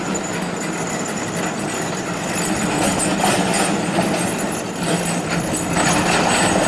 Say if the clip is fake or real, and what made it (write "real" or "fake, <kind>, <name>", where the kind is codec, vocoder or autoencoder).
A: real